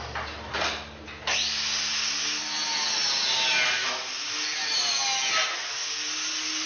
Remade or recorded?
recorded